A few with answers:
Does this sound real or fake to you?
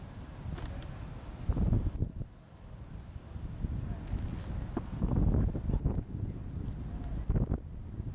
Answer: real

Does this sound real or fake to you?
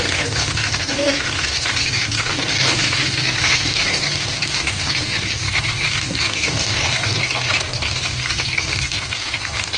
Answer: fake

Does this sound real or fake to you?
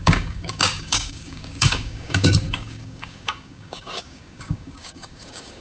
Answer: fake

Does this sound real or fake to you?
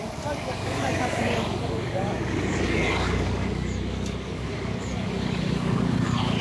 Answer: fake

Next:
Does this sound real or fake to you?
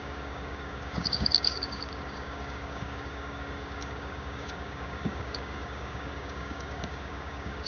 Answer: fake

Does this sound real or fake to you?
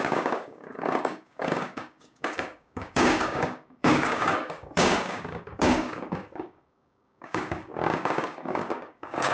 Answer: fake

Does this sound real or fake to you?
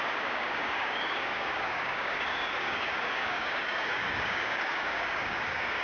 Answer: fake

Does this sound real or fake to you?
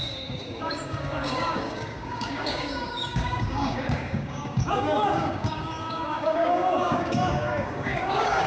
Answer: fake